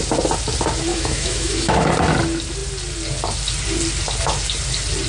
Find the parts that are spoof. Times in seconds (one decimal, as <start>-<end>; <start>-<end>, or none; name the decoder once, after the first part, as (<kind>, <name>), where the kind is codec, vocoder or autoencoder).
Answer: 0.9-1.9 (autoencoder, DAC-VAE)

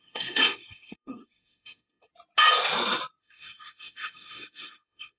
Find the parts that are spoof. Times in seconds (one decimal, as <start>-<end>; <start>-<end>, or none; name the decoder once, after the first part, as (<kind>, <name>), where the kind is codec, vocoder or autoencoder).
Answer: 0.0-2.1 (codec, SNAC); 3.2-5.2